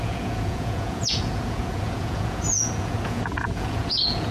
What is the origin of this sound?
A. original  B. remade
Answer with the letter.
B